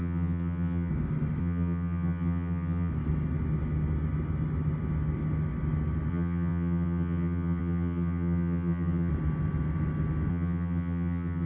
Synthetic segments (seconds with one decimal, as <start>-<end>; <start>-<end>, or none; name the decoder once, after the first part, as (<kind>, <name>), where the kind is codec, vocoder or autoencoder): 0.0-0.9 (vocoder, HiFi-GAN); 1.4-2.9; 6.1-9.1; 10.3-11.5